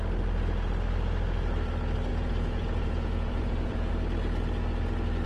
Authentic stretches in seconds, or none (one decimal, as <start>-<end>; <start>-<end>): 0.0-2.1; 3.9-5.3